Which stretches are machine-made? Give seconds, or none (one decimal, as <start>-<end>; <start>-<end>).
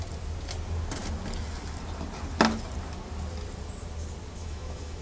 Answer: 4.4-5.0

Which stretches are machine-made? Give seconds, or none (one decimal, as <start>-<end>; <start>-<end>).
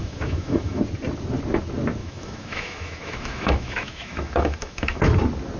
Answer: 0.0-0.8; 2.0-5.1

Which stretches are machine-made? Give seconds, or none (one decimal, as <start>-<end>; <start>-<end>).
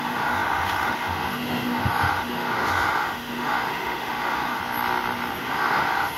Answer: 0.0-4.6; 5.4-6.2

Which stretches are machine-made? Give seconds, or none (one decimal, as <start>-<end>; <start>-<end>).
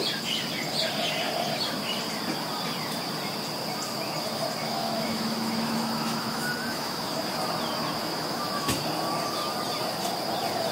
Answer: 4.6-7.2; 8.0-8.8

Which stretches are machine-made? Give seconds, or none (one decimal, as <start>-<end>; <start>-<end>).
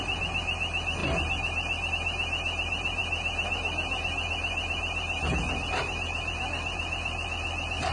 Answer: none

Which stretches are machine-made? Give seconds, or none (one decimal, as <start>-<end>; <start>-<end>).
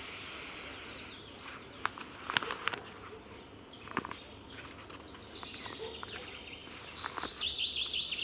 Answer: none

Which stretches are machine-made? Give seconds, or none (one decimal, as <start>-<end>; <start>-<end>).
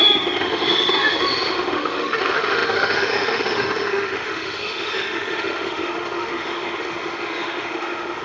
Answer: 0.0-8.2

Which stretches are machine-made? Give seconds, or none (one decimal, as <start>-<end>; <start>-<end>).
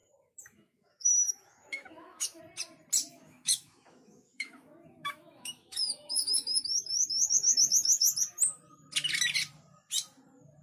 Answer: 0.0-2.4; 3.1-8.1